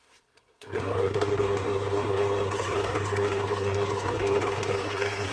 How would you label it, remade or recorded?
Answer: remade